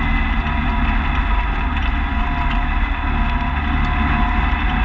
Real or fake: real